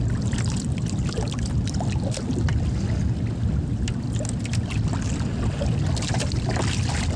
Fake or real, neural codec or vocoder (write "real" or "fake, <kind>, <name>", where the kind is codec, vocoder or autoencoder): real